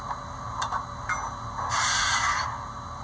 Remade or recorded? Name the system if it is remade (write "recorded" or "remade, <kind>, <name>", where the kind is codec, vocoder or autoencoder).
recorded